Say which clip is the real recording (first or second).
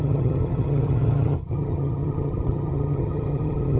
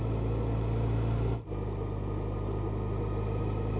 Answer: second